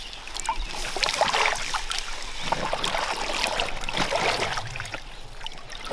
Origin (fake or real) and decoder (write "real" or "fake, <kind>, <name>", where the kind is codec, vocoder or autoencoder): real